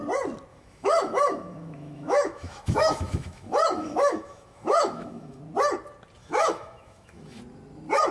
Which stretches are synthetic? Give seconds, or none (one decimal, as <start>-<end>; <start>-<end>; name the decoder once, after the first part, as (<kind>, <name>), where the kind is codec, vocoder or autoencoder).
0.5-5.4 (autoencoder, DAC-VAE); 6.2-7.4